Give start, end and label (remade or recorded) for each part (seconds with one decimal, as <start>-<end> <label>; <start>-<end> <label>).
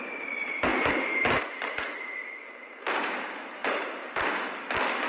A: 0.0-0.7 recorded; 0.7-3.2 remade; 3.2-3.6 recorded; 3.6-4.4 remade; 4.4-5.1 recorded